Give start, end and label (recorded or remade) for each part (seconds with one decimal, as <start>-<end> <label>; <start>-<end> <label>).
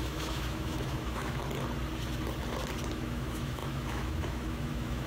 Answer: 0.0-1.4 remade; 1.4-2.9 recorded; 2.9-5.1 remade